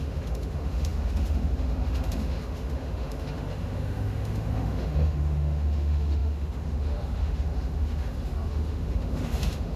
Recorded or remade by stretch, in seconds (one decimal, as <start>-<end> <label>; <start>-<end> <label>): 0.0-9.8 remade